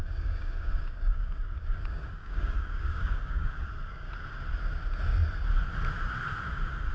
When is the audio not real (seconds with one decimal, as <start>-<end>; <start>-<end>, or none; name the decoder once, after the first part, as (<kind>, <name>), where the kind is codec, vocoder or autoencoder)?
0.0-4.1 (codec, DAC)